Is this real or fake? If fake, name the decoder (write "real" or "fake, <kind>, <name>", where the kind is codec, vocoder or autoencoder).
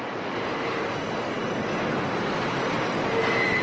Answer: real